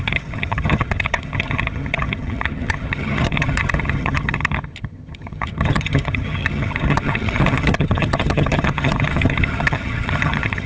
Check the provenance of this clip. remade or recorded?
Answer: remade